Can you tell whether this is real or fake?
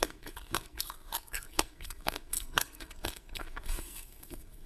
fake